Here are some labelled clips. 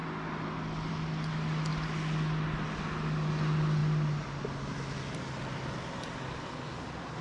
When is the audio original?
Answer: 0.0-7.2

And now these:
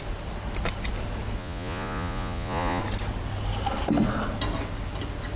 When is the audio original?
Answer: 0.0-1.4; 2.8-5.4